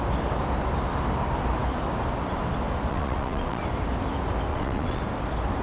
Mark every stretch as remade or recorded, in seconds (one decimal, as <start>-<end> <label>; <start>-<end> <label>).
0.0-2.9 recorded; 2.9-3.6 remade; 3.6-4.5 recorded; 4.5-5.0 remade; 5.0-5.6 recorded

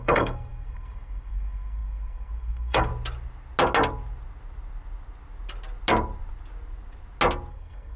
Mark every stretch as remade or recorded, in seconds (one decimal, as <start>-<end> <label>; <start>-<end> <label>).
0.0-2.9 remade; 2.9-7.5 recorded; 7.5-8.0 remade

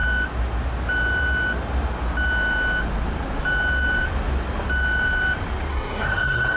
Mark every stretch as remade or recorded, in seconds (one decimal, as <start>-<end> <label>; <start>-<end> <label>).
0.0-5.7 recorded; 5.7-6.6 remade

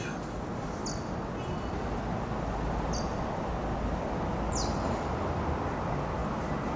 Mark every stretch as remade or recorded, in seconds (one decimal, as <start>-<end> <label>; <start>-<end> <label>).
0.0-6.8 recorded